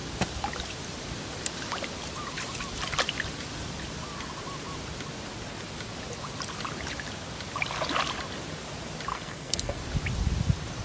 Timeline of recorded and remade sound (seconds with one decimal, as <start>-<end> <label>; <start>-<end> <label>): 0.0-9.1 recorded; 9.1-9.8 remade; 9.8-10.8 recorded